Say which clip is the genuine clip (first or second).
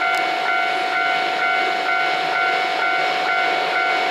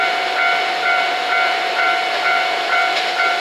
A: first